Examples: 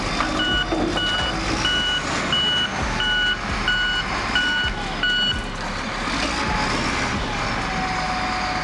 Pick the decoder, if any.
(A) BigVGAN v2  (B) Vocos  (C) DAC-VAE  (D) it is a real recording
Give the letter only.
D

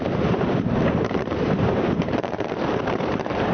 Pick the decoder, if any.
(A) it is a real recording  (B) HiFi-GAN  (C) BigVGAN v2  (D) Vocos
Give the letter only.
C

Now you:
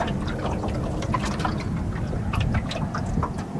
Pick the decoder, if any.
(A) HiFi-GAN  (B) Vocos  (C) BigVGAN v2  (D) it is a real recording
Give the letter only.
D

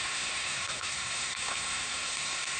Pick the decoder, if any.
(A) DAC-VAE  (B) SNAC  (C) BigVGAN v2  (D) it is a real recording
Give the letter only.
B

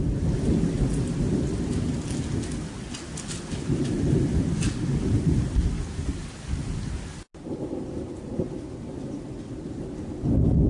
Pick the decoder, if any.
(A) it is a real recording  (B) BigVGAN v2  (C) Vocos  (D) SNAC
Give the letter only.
A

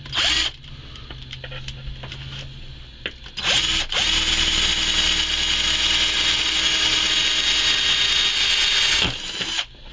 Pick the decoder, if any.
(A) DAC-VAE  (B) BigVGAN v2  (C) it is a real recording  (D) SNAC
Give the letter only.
C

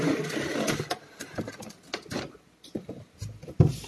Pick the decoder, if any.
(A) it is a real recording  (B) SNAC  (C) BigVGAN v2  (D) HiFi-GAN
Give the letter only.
A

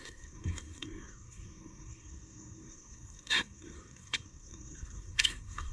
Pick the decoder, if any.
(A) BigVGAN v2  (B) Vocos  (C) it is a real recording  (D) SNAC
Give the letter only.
D